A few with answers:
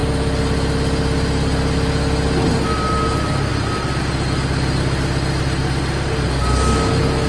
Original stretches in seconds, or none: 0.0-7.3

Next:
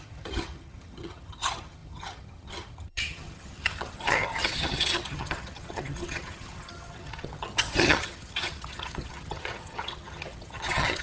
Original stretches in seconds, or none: none

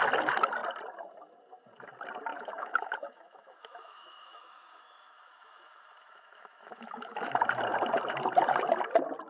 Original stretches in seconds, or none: 0.0-2.3; 7.4-9.3

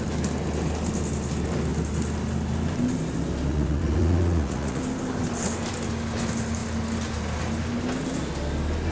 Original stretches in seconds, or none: 0.0-3.5; 4.8-8.9

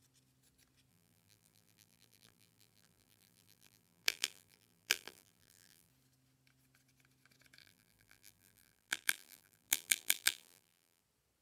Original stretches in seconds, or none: 0.0-0.9; 5.9-7.6; 11.0-11.4